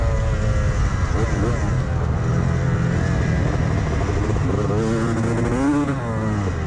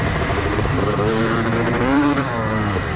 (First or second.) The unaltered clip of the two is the first